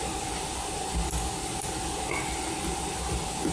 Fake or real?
real